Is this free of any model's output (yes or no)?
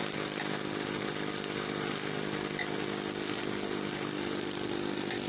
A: yes